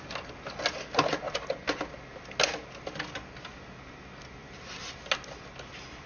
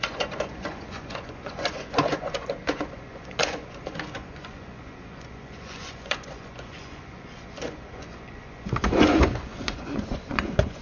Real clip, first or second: first